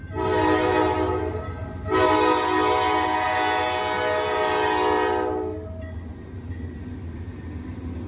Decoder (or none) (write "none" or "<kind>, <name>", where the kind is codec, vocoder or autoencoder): none